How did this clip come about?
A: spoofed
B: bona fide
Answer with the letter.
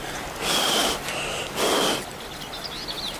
B